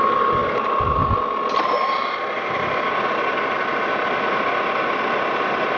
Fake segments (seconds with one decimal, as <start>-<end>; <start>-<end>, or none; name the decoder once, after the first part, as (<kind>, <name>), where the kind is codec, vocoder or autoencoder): none